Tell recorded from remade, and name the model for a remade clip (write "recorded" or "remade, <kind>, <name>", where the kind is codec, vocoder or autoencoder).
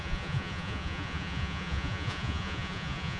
remade, vocoder, Vocos